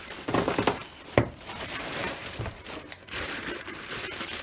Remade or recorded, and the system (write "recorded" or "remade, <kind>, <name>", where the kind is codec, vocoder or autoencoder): remade, vocoder, BigVGAN v2